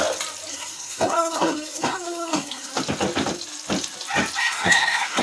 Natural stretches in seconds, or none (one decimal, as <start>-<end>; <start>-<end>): 0.0-0.5; 2.7-4.4